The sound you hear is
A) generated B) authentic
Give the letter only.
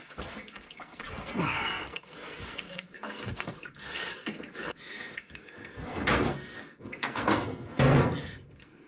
A